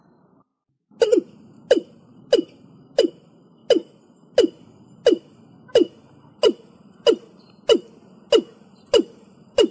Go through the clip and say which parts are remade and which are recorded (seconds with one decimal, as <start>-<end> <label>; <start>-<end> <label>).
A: 0.0-0.5 remade; 0.5-2.2 recorded; 2.2-3.6 remade; 3.6-8.7 recorded; 8.7-9.7 remade